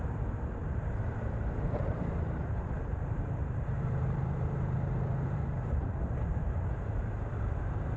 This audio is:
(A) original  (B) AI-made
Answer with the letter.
B